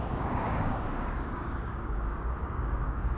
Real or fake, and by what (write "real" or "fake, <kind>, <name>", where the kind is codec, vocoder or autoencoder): fake, codec, DAC